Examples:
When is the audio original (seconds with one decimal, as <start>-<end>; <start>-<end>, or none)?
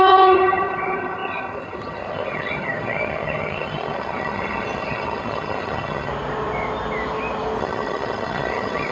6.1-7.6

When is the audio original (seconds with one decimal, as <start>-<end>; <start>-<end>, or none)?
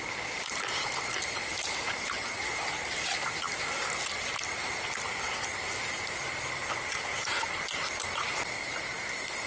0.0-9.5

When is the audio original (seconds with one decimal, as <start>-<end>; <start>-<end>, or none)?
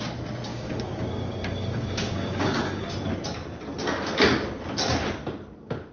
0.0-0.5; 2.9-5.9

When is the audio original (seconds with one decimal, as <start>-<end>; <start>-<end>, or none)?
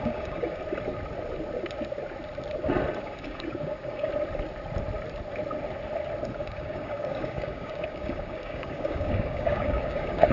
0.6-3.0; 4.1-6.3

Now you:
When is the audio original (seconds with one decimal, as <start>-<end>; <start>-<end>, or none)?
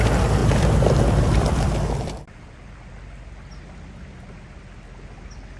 0.0-0.4; 2.9-5.6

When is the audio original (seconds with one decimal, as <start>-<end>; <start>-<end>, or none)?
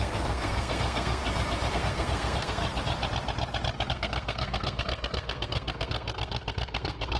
1.2-1.7; 2.6-3.9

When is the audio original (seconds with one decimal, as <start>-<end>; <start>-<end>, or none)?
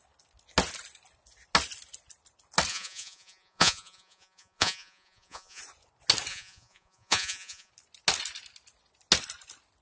0.0-2.7; 5.6-6.3; 7.7-9.8